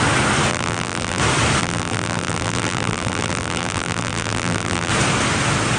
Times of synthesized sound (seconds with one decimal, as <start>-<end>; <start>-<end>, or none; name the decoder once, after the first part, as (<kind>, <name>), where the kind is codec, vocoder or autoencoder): 0.5-1.2 (vocoder, BigVGAN v2); 1.6-4.9